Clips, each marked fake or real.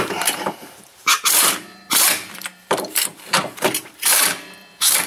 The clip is fake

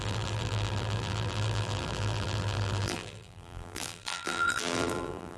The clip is fake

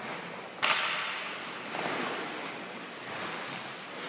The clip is real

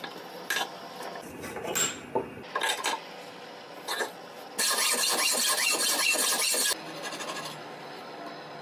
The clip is real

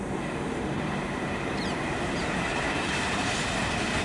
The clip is fake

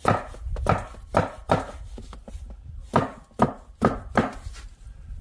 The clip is real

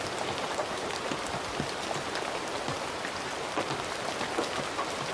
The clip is real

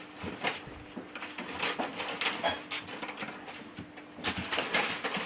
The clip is real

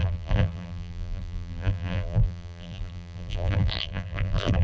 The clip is fake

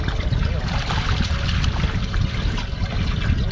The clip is real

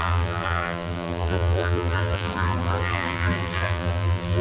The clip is fake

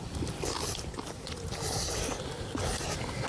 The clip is real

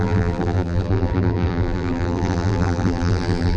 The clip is fake